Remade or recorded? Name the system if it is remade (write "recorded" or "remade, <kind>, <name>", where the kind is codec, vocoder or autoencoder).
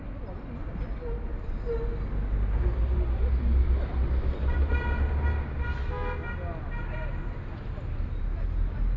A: recorded